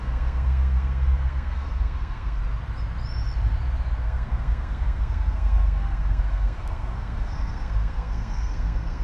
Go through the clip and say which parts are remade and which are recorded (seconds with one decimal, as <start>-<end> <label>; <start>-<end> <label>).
0.0-2.4 remade; 2.4-4.0 recorded; 4.0-9.0 remade